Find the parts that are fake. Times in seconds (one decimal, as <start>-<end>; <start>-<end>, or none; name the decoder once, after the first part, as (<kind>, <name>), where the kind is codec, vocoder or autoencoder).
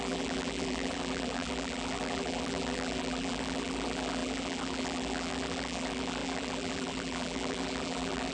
0.0-8.3 (vocoder, BigVGAN v2)